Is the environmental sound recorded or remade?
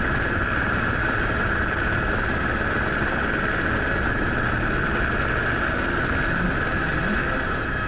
recorded